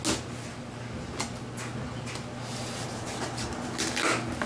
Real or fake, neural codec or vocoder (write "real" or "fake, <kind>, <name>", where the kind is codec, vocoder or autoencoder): real